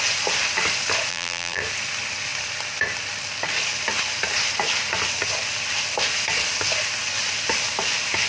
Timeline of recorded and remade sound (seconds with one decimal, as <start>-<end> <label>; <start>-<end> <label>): 0.0-1.1 recorded; 1.1-1.6 remade; 1.6-8.3 recorded